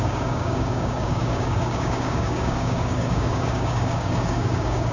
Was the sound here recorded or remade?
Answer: remade